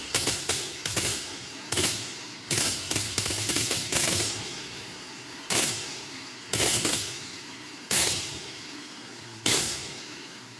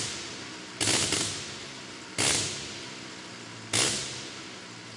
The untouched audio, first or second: second